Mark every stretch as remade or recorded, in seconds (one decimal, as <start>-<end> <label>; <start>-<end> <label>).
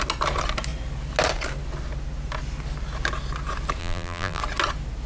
0.0-3.8 recorded; 3.8-4.4 remade; 4.4-5.1 recorded